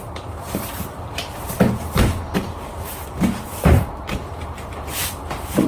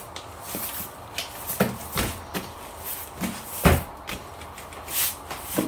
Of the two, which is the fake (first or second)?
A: first